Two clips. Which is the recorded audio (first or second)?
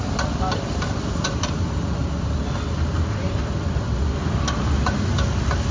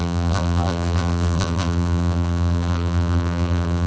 first